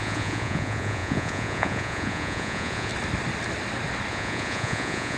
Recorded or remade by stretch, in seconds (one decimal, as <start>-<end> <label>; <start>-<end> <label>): 0.0-2.9 remade; 2.9-4.1 recorded; 4.1-5.2 remade